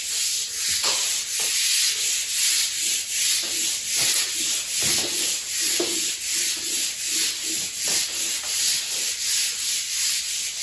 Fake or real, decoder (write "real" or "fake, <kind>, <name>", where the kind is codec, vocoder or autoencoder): real